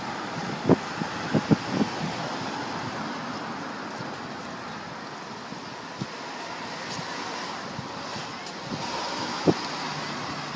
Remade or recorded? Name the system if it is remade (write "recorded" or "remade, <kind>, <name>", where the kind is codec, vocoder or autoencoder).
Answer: recorded